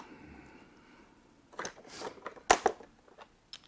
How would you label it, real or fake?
real